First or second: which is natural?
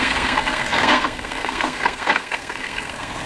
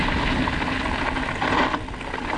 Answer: second